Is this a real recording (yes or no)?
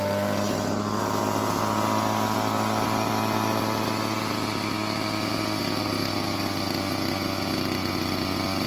yes